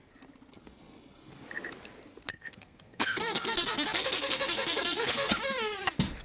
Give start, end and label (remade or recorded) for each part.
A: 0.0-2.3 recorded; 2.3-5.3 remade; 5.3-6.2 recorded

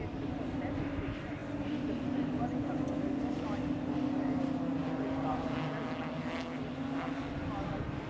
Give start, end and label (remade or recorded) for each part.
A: 0.0-8.1 recorded